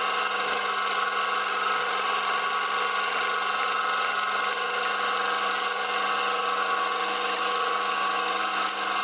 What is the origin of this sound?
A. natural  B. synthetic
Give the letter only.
A